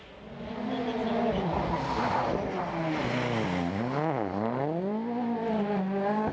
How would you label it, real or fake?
real